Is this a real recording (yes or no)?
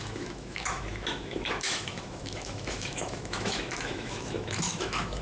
no